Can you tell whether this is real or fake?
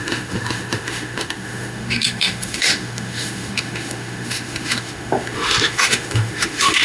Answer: fake